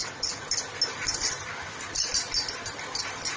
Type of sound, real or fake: real